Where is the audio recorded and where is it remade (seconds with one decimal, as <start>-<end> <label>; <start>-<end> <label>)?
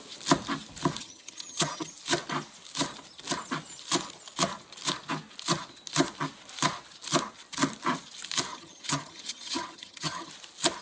0.0-1.0 recorded; 1.0-1.9 remade; 1.9-8.5 recorded; 8.5-10.3 remade; 10.3-10.8 recorded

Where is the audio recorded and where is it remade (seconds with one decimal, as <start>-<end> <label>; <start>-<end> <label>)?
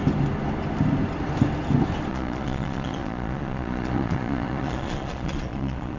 0.0-2.1 recorded; 2.1-6.0 remade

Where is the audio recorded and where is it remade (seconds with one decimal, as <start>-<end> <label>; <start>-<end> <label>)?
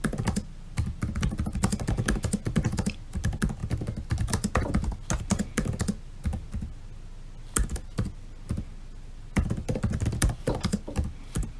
0.0-11.6 recorded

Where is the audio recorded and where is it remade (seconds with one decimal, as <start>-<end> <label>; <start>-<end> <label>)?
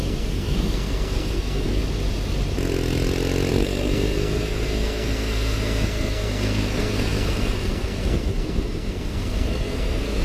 0.0-1.8 remade; 1.8-3.5 recorded; 3.5-10.2 remade